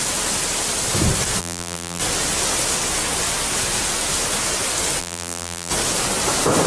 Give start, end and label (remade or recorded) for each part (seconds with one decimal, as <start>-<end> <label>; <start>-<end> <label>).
0.0-1.4 recorded; 1.4-2.0 remade; 2.0-5.0 recorded; 5.0-5.7 remade; 5.7-6.7 recorded